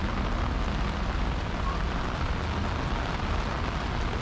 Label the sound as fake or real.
real